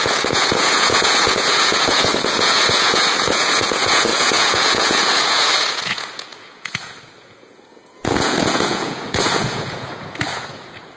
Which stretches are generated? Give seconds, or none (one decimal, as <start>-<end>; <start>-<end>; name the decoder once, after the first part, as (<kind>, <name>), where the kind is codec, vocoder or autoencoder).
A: 0.0-11.0 (vocoder, Vocos)